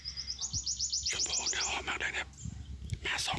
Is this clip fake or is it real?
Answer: real